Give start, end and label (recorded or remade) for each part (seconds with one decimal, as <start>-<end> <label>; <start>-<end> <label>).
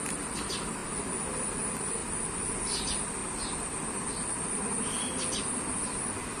0.0-6.4 recorded